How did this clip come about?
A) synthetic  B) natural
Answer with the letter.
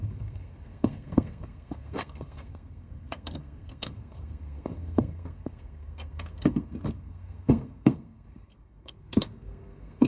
A